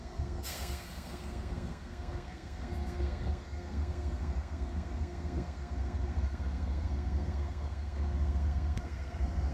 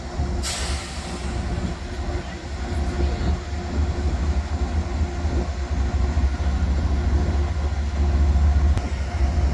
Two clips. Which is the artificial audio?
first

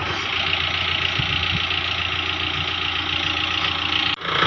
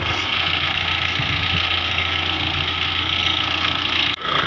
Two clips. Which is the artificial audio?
second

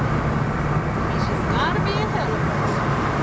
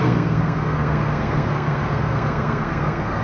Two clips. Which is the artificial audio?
second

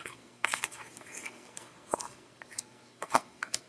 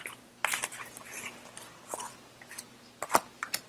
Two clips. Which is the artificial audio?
first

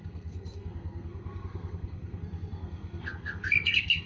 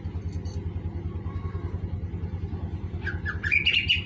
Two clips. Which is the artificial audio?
first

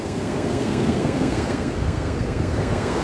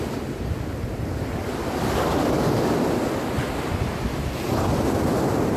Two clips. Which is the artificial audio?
first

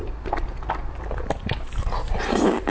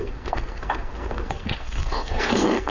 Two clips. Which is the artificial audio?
second